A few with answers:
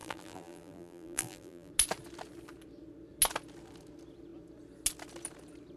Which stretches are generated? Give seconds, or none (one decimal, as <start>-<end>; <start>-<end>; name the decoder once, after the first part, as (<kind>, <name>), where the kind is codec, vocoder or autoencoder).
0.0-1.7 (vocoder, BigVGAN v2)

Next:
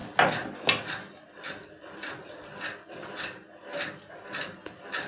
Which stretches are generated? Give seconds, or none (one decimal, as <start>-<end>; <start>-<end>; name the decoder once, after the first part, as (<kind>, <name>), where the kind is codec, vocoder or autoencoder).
none

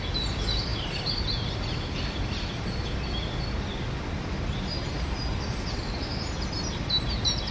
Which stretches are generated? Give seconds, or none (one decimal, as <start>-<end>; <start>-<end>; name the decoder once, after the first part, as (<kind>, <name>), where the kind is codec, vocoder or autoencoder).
none